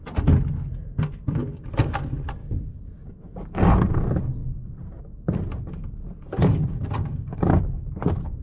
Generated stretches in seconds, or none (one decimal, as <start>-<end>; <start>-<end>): 2.4-3.1; 6.6-7.6